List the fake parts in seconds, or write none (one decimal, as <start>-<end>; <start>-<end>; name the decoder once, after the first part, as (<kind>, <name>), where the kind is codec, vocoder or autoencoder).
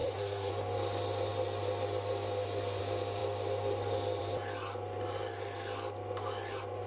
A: 0.0-0.5 (codec, SNAC)